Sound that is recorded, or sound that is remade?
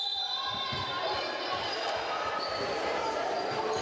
recorded